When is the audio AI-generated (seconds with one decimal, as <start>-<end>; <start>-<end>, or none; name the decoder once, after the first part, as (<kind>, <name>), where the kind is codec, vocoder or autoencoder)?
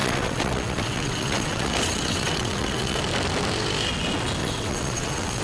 0.0-3.0 (vocoder, WaveNeXt); 4.4-5.4